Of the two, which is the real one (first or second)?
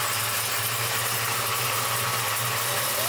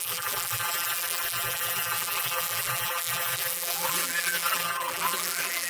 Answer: first